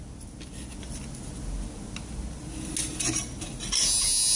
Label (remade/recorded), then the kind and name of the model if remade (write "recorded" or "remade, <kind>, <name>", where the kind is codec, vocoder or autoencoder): recorded